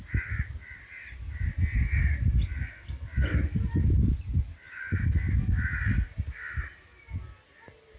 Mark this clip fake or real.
real